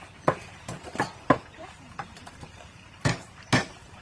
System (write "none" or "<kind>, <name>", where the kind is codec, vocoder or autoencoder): vocoder, BigVGAN v2